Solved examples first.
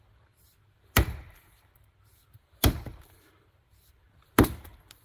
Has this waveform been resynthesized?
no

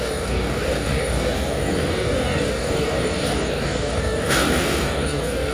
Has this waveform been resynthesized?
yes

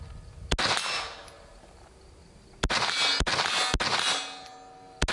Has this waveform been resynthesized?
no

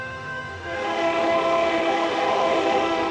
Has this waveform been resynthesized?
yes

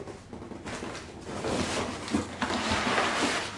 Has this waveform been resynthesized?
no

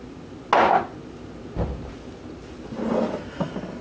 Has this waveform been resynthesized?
no